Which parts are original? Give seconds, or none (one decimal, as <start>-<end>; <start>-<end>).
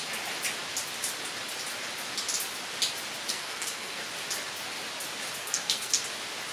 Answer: 0.0-3.3; 4.0-5.4; 6.0-6.5